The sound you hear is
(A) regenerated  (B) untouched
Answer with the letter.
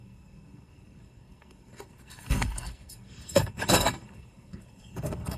A